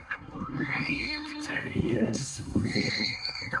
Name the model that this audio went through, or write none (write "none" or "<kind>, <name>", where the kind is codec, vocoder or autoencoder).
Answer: codec, SNAC